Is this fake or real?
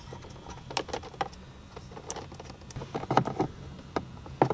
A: real